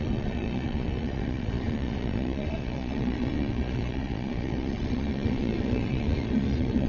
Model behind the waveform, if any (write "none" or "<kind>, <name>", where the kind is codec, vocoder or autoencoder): vocoder, Vocos